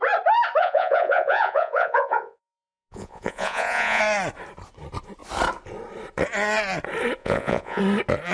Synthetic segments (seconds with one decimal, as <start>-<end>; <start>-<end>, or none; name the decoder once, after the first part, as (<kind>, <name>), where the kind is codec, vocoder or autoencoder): 0.6-4.0 (vocoder, Vocos); 7.2-7.8